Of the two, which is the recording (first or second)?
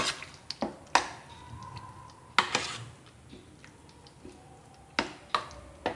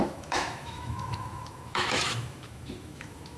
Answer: first